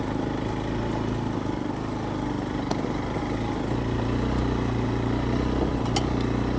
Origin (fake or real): real